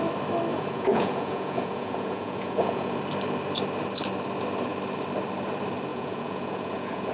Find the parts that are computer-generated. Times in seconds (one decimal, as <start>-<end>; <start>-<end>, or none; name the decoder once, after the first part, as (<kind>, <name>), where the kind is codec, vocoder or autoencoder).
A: 0.5-3.0 (vocoder, Vocos); 5.9-7.1